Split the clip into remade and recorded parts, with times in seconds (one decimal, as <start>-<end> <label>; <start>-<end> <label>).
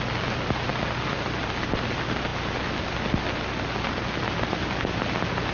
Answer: 0.0-5.5 recorded